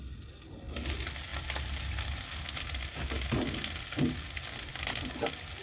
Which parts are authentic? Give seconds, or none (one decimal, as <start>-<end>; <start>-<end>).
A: 0.0-5.6